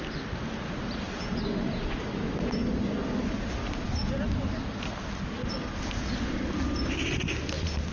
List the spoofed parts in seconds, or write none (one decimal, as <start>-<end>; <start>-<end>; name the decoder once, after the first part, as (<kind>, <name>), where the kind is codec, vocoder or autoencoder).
none

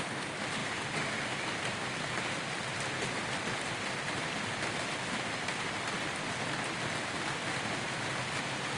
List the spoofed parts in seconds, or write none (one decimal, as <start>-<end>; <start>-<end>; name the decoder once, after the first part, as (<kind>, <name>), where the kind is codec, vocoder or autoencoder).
none